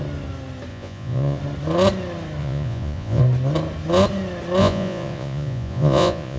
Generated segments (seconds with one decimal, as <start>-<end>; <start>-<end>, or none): 0.7-1.4; 2.4-3.2; 4.6-6.4